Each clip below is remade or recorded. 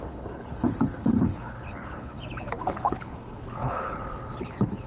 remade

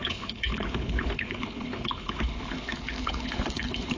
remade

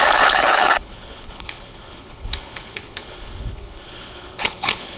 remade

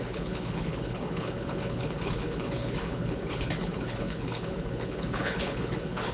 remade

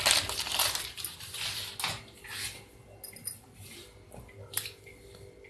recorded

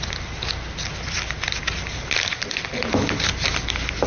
recorded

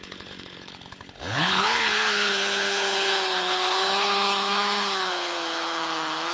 remade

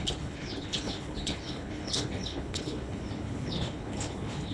remade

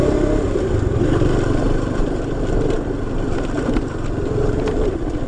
recorded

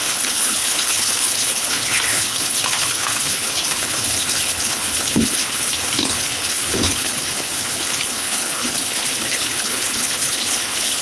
remade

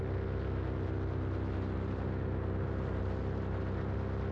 recorded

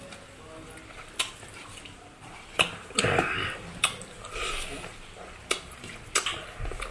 recorded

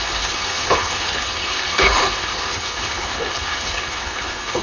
remade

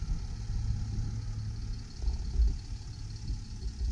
recorded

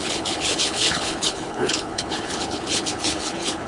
remade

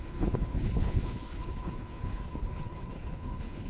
remade